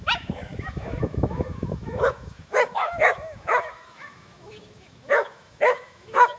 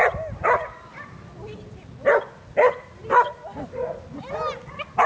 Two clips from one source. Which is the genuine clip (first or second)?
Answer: second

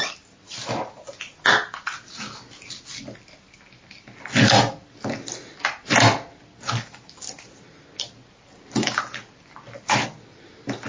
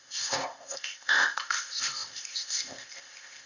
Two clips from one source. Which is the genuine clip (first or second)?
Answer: first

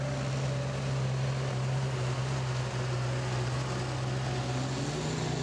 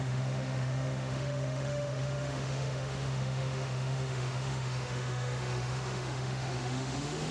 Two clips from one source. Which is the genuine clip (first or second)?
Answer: first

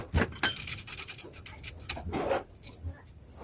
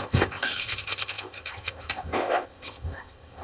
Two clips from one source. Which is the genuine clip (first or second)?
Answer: first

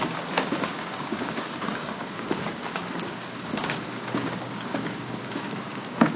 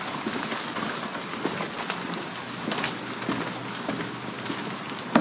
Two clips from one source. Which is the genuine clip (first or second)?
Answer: second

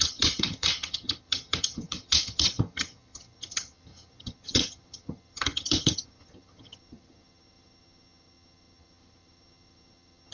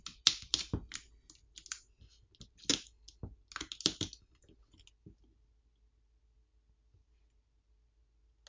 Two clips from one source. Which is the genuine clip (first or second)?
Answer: second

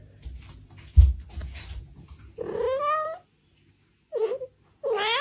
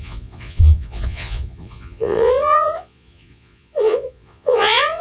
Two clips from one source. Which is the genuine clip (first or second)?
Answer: first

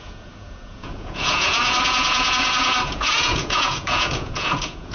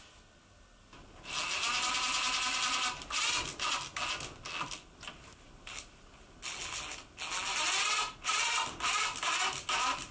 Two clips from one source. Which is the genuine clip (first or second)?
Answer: second